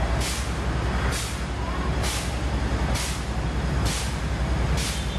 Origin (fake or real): real